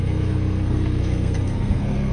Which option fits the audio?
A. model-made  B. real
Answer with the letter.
A